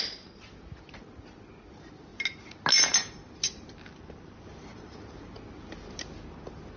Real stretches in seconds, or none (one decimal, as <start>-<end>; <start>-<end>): 0.0-6.8